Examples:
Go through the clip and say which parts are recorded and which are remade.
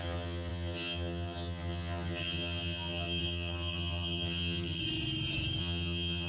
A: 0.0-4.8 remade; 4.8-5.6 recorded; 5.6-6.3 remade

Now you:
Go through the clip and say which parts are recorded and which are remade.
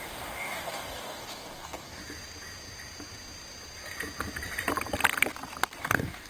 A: 0.0-2.0 remade; 2.0-5.8 recorded; 5.8-6.3 remade